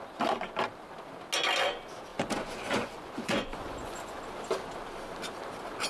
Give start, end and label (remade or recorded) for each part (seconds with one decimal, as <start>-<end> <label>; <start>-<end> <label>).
0.0-2.1 recorded; 2.1-4.2 remade; 4.2-5.9 recorded

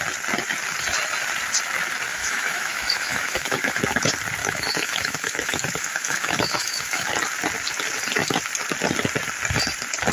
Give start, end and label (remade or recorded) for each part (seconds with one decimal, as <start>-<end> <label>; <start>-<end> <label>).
0.0-2.1 recorded; 2.1-3.8 remade; 3.8-4.4 recorded; 4.4-7.1 remade; 7.1-10.1 recorded

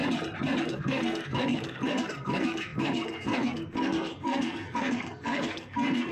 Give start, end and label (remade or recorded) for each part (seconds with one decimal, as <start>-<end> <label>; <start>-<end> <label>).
0.0-0.6 recorded; 0.6-6.1 remade

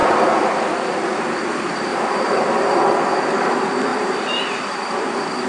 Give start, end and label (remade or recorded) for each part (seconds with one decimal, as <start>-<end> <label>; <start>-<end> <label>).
0.0-1.1 remade; 1.1-1.9 recorded; 1.9-2.9 remade; 2.9-5.5 recorded

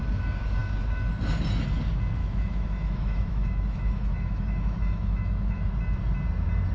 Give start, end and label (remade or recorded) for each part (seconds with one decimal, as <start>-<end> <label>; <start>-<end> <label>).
0.0-2.2 recorded; 2.2-5.7 remade; 5.7-6.7 recorded

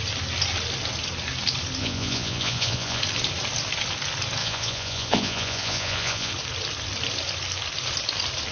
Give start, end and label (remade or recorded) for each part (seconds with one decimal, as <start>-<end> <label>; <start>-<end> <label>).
0.0-1.8 recorded; 1.8-3.0 remade; 3.0-4.4 recorded; 4.4-6.3 remade; 6.3-8.5 recorded

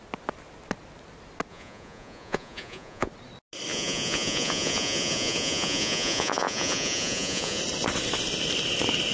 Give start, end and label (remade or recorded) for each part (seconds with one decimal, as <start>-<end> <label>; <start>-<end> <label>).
0.0-1.5 recorded; 1.5-3.1 remade; 3.1-3.7 recorded; 3.7-7.6 remade; 7.6-9.1 recorded

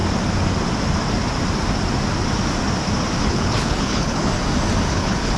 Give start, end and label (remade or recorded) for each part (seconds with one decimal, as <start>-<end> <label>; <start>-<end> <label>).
0.0-3.2 recorded; 3.2-4.3 remade; 4.3-4.9 recorded; 4.9-5.4 remade